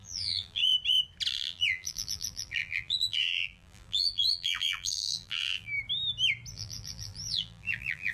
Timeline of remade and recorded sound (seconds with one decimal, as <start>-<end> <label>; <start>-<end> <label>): 0.0-0.6 remade; 0.6-1.3 recorded; 1.3-5.7 remade; 5.7-6.5 recorded; 6.5-8.1 remade